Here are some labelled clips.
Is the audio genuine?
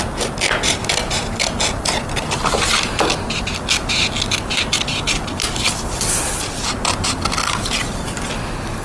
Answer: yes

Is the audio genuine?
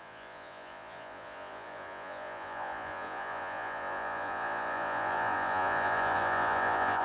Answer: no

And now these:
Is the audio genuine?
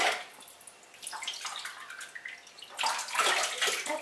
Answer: yes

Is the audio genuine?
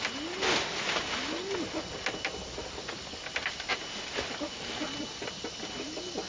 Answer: yes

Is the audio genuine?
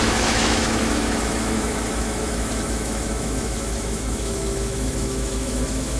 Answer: no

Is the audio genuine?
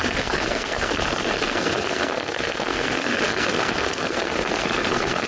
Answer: no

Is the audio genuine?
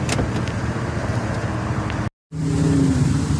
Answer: yes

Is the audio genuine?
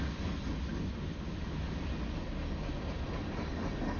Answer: yes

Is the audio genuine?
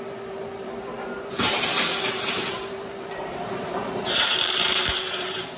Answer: no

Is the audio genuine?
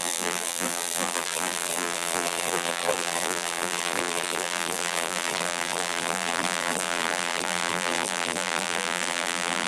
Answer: no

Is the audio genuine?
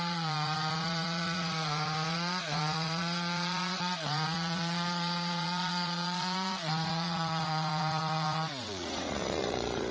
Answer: no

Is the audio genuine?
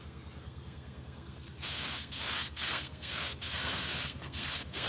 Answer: no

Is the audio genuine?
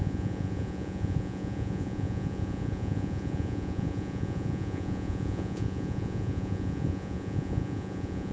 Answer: no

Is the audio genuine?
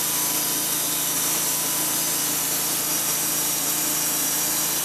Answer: yes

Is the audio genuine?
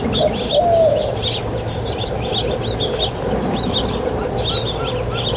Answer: yes